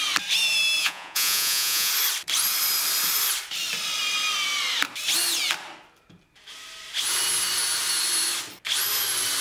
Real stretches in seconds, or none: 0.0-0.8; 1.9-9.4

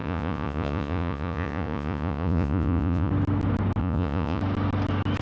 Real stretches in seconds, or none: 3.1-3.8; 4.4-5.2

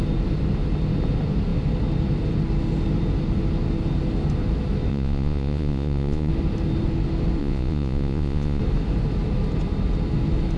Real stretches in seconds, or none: 0.0-4.9; 6.3-7.4; 8.6-10.6

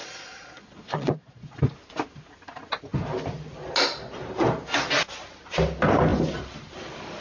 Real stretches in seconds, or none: 1.6-7.2